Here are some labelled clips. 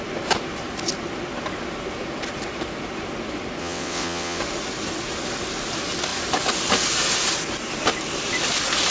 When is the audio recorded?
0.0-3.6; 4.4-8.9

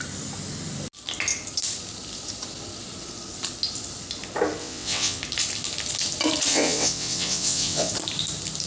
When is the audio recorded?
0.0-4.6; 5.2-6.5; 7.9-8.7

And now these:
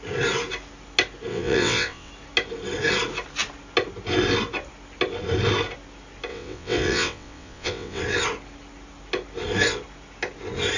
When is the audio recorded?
0.0-1.3; 2.1-6.3; 8.0-10.8

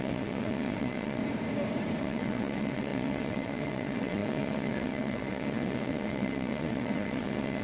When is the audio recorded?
1.2-2.0

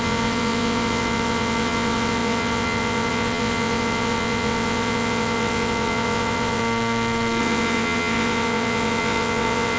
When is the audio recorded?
6.6-7.4

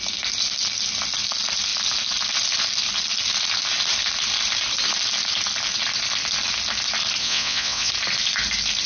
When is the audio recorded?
0.0-7.2; 7.9-8.9

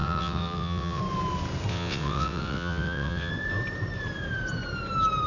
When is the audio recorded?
1.0-1.7; 3.3-5.3

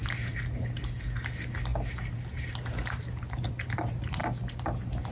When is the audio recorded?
0.0-5.1